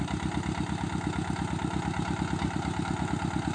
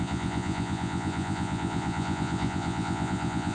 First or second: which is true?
first